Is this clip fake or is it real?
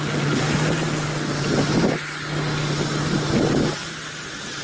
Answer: real